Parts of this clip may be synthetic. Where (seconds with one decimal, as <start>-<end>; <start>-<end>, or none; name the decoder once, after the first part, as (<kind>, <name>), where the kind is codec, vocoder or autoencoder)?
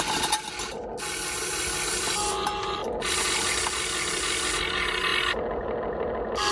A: none